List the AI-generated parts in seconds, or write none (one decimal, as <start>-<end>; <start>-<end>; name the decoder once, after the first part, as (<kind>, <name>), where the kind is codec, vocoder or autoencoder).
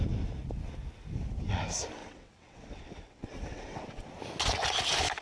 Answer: 2.0-4.1 (vocoder, WaveNeXt)